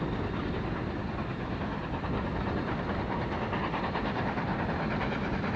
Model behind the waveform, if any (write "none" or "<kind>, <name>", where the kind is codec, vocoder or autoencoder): none